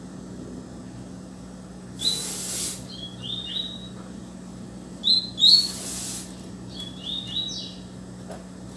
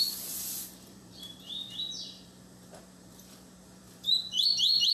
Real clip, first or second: first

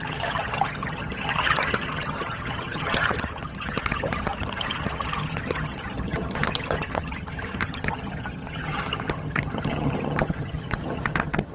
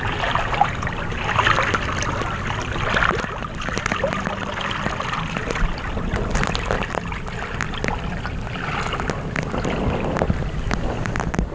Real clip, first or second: second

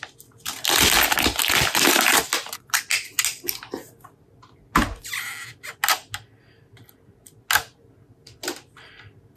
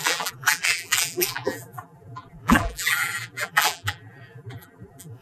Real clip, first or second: first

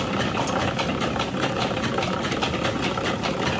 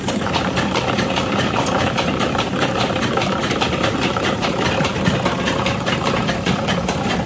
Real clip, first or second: first